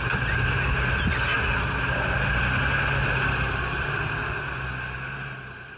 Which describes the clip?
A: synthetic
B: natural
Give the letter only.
B